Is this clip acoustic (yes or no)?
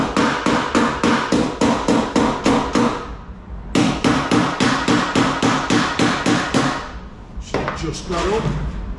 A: yes